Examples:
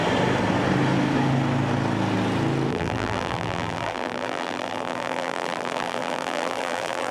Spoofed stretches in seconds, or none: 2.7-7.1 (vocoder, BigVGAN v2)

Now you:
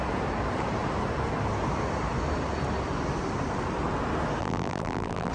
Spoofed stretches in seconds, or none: 4.4-5.3 (vocoder, BigVGAN v2)

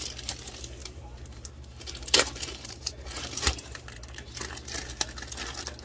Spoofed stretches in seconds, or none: 0.8-4.3 (vocoder, BigVGAN v2)

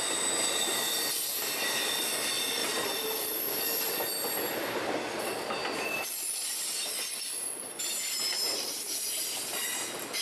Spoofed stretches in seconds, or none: 2.6-3.8 (vocoder, BigVGAN v2); 5.6-10.2

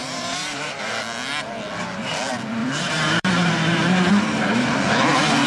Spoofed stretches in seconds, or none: 0.0-0.8 (vocoder, BigVGAN v2); 2.6-4.1

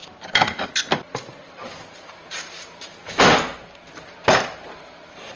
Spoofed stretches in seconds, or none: 1.1-3.3 (vocoder, BigVGAN v2); 3.9-5.4

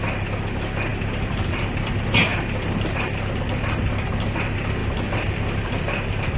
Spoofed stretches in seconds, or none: 0.9-1.7 (vocoder, BigVGAN v2); 2.3-3.2; 4.8-6.4

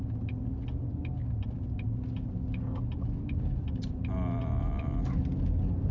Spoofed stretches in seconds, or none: none